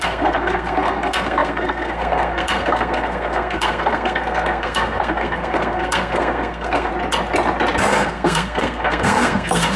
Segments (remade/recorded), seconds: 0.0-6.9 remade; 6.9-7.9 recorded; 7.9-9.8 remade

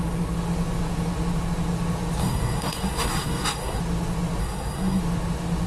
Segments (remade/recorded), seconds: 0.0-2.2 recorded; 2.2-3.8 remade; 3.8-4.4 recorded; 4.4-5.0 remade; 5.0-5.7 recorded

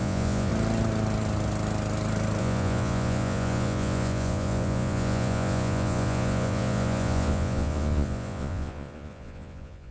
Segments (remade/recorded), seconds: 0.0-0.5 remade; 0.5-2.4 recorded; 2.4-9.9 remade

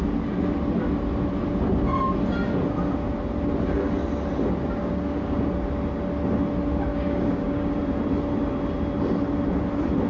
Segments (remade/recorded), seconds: 0.0-4.8 recorded; 4.8-5.5 remade; 5.5-6.9 recorded; 6.9-7.8 remade; 7.8-10.1 recorded